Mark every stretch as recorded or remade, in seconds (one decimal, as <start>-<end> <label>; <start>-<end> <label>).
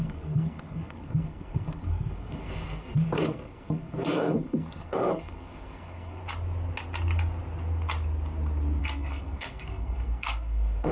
0.0-6.2 remade; 6.2-8.8 recorded; 8.8-10.9 remade